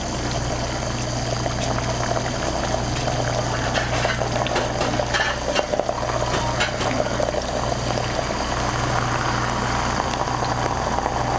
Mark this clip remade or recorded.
recorded